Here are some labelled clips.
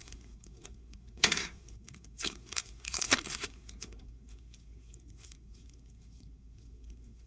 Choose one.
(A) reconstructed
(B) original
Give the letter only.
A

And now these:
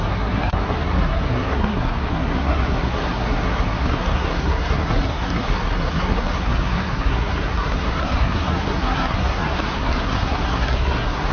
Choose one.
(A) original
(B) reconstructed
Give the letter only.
B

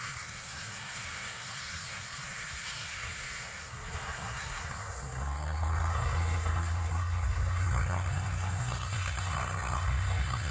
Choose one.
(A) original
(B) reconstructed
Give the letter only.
B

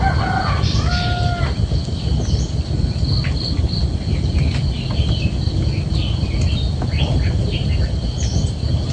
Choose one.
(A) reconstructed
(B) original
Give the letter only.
B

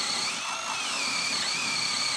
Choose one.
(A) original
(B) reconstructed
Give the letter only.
A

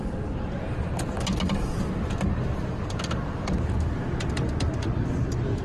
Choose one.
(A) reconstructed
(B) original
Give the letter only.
B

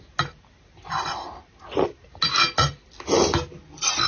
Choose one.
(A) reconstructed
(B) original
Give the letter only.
B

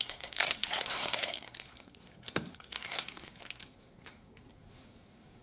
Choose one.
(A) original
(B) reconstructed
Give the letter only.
B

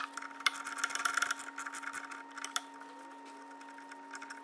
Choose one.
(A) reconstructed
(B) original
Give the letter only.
B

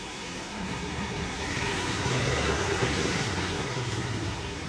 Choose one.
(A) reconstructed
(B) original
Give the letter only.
A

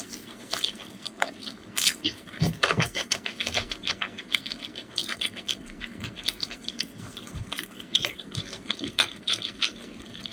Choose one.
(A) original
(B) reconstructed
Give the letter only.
B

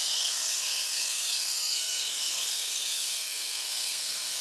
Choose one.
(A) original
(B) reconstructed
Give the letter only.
B